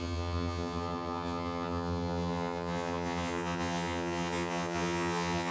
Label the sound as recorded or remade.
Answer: remade